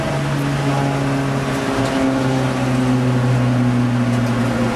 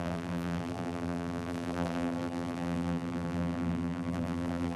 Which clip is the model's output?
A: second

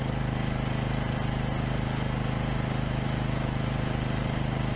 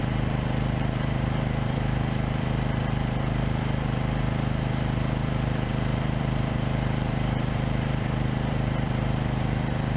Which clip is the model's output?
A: second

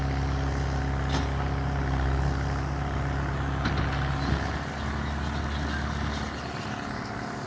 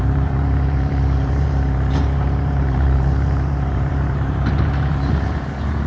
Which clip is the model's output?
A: second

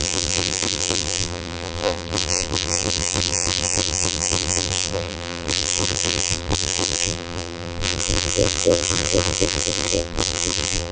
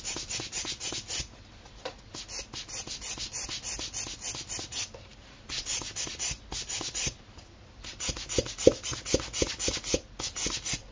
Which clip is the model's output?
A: first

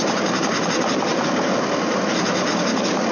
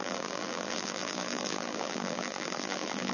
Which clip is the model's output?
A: second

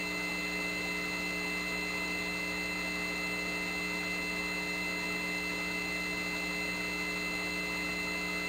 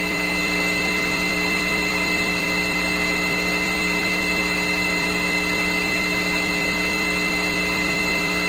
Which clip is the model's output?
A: second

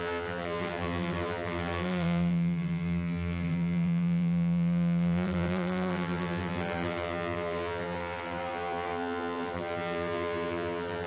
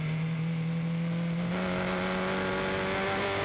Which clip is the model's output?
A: first